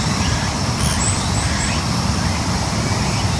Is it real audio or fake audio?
real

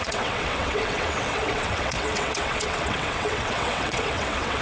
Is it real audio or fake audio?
fake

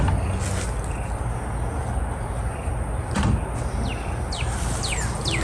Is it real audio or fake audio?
real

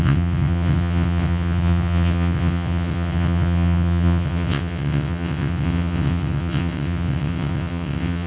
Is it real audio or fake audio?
fake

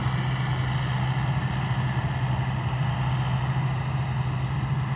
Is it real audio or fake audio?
real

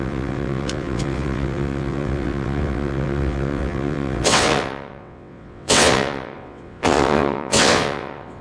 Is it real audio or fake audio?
fake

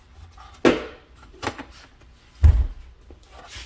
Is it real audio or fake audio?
real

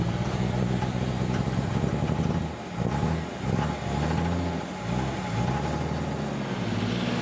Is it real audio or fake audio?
real